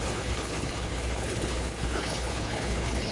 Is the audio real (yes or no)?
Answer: no